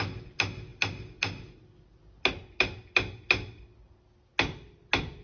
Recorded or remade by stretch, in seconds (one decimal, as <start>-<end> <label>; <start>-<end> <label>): 0.0-5.2 recorded